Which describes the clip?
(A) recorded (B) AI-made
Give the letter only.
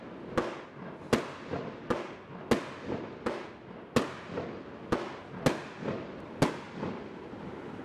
A